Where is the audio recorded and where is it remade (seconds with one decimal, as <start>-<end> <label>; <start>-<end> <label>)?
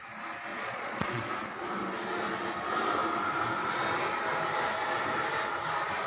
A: 0.0-0.5 recorded; 0.5-1.3 remade; 1.3-6.1 recorded